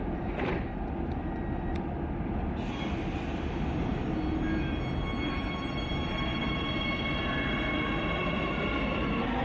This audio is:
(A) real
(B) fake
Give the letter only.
A